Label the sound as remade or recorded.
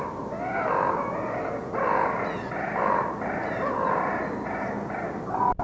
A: recorded